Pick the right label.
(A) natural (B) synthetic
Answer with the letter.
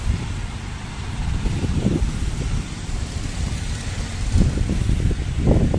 B